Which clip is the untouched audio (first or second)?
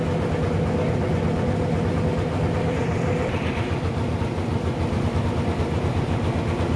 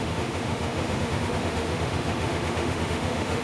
first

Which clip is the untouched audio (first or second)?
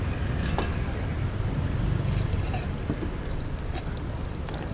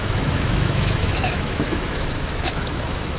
first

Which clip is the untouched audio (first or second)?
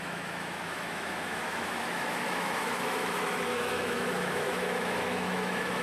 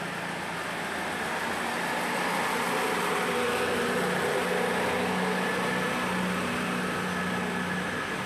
second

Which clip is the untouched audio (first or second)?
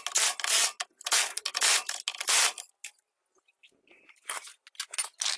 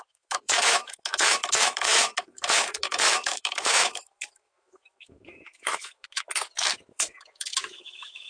first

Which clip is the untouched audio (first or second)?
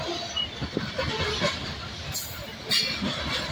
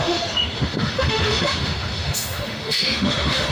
first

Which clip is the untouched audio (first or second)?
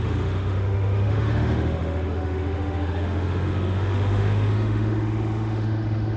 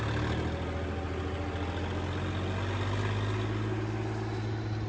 second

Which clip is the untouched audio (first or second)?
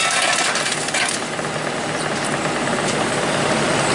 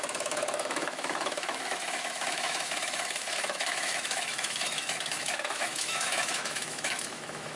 first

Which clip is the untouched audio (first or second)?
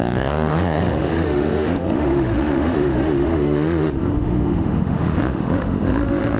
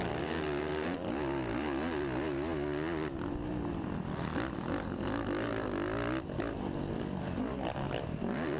second